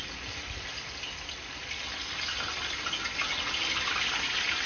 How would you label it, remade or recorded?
recorded